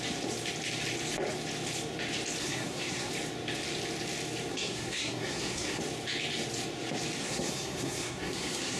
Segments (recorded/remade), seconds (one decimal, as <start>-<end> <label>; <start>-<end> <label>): 0.0-2.4 recorded; 2.4-3.1 remade; 3.1-4.5 recorded; 4.5-5.8 remade; 5.8-7.2 recorded; 7.2-8.8 remade